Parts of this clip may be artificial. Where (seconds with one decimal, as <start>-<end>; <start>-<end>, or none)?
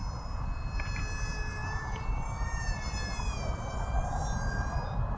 1.6-3.7